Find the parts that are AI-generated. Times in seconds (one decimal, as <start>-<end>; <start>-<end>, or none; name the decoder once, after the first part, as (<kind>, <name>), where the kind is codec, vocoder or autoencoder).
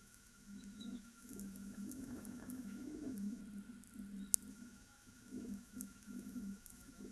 0.0-3.4 (autoencoder, DAC-VAE); 4.5-7.1